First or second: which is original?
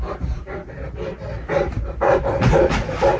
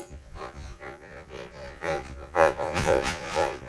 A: first